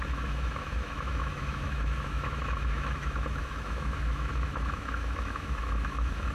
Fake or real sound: fake